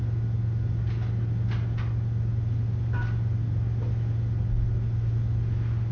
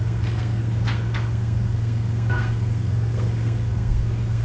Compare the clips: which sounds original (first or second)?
first